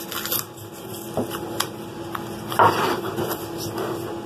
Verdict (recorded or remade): recorded